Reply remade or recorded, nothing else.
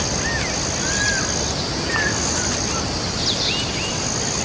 recorded